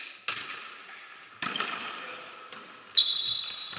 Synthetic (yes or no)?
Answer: no